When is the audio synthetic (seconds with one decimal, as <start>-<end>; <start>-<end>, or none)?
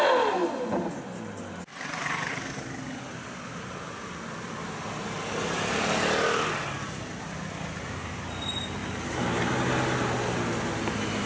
none